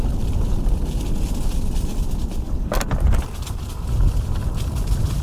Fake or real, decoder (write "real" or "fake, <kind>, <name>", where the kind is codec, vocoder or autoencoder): real